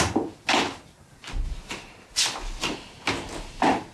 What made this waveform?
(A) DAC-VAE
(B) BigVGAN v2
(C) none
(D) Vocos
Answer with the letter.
C